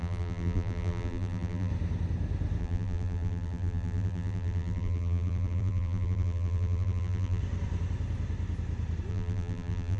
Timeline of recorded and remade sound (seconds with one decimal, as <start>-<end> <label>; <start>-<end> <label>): 0.0-1.7 remade; 1.7-2.6 recorded; 2.6-7.4 remade; 7.4-9.1 recorded; 9.1-10.0 remade